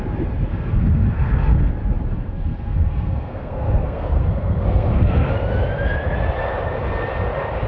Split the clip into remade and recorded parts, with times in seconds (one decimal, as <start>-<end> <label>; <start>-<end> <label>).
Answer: 0.0-0.5 recorded; 0.5-1.7 remade; 1.7-2.1 recorded; 2.1-5.3 remade; 5.3-7.7 recorded